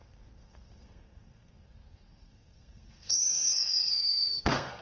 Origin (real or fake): fake